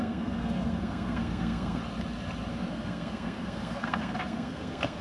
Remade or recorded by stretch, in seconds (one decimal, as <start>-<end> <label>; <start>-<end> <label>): 0.0-1.8 remade; 1.8-2.5 recorded; 2.5-5.0 remade